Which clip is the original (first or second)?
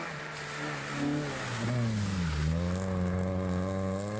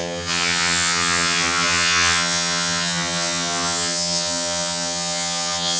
first